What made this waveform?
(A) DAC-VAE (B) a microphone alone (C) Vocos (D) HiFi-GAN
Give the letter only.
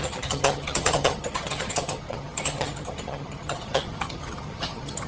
D